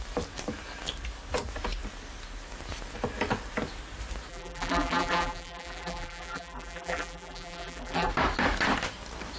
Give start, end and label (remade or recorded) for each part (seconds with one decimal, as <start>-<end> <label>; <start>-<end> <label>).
0.0-4.3 recorded; 4.3-8.1 remade; 8.1-9.4 recorded